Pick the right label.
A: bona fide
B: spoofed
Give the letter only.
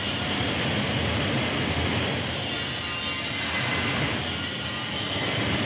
A